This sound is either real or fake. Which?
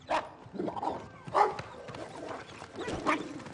real